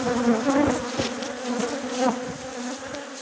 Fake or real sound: real